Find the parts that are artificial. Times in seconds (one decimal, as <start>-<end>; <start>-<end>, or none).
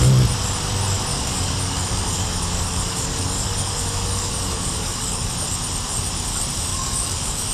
1.1-5.3; 6.7-7.5